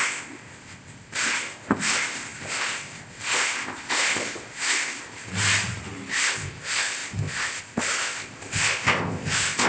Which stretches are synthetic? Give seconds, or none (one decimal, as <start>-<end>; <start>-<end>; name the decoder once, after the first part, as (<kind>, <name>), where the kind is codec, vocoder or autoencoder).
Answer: 0.0-5.3 (codec, ZipCodec); 6.1-9.7